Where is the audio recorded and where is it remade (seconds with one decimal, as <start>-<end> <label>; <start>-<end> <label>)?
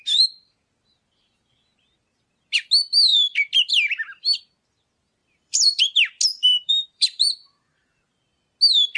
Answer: 0.0-3.1 recorded; 3.1-3.7 remade; 3.7-5.2 recorded; 5.2-5.8 remade; 5.8-6.3 recorded; 6.3-8.0 remade; 8.0-9.0 recorded